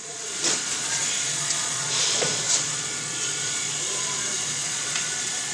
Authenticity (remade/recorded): remade